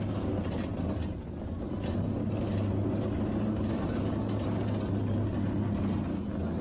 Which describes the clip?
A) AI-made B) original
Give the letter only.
B